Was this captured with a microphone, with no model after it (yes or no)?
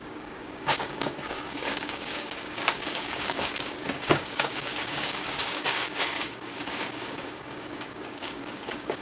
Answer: no